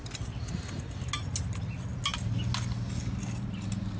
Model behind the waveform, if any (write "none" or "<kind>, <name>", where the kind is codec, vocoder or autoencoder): none